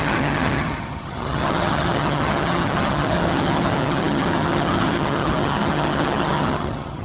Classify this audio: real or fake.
fake